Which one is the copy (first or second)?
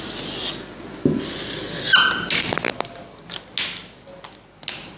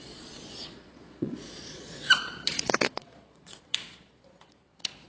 second